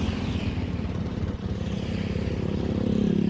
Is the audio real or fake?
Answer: real